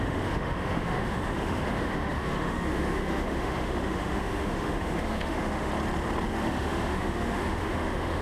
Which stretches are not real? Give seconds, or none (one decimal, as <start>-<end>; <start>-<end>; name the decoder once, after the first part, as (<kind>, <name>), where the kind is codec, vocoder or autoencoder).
0.0-5.7 (autoencoder, DAC-VAE); 6.3-8.2